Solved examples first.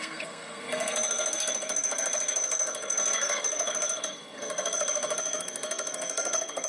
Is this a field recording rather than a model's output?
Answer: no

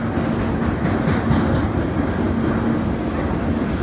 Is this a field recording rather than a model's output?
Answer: yes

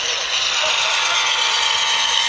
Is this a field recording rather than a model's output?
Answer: yes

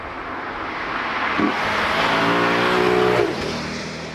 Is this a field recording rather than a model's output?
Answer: yes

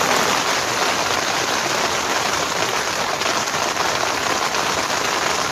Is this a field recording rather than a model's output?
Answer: yes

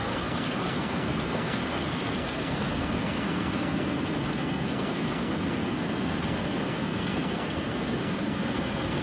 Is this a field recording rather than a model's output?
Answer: no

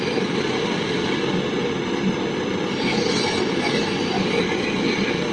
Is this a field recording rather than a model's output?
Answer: yes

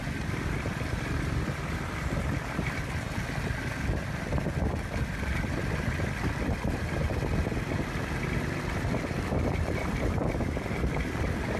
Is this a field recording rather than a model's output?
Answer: yes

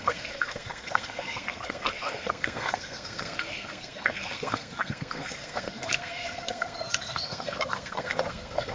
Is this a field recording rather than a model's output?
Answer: no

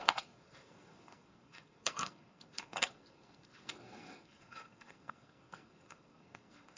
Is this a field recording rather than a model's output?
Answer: no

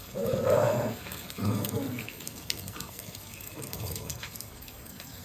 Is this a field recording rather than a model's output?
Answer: no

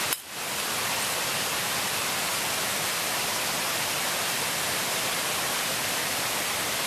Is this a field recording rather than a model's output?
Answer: yes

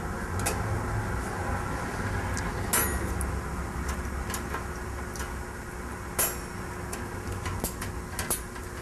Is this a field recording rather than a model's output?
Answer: yes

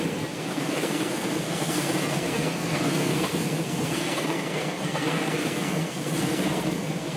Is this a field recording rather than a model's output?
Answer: no